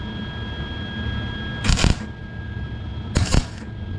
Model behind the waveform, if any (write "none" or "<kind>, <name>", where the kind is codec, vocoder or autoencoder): none